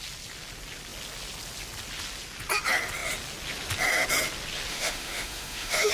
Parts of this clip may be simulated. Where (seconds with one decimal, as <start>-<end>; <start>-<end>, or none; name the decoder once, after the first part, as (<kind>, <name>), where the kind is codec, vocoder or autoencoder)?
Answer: 4.7-5.9 (autoencoder, DAC-VAE)